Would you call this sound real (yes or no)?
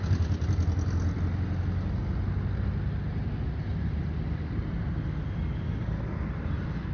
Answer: yes